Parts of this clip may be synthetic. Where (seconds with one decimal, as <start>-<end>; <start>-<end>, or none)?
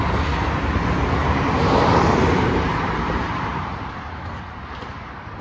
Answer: 1.2-4.4